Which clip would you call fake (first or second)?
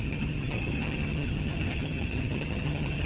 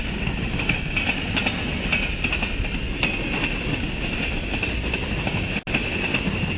first